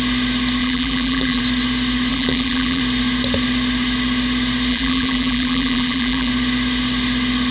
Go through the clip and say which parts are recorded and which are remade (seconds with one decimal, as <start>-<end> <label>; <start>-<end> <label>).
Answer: 0.0-0.6 recorded; 0.6-1.4 remade; 1.4-2.1 recorded; 2.1-2.8 remade; 2.8-4.7 recorded; 4.7-6.3 remade; 6.3-7.5 recorded